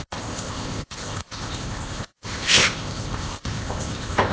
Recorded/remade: remade